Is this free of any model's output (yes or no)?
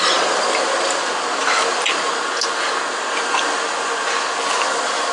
yes